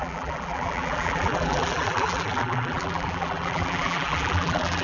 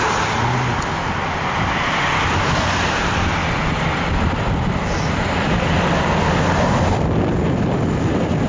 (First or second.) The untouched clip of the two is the second